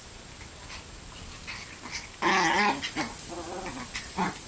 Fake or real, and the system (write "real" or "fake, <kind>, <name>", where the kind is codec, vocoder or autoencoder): real